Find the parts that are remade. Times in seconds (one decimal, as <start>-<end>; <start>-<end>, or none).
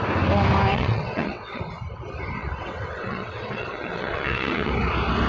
0.7-1.6; 2.4-4.7